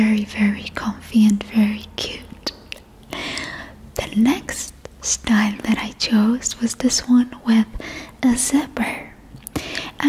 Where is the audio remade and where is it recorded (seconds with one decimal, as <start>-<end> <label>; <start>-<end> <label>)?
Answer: 0.0-3.2 recorded; 3.2-4.4 remade; 4.4-10.1 recorded